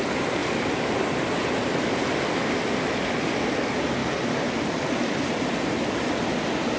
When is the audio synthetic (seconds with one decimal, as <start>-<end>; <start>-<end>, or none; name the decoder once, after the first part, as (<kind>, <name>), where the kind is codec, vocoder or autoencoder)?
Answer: none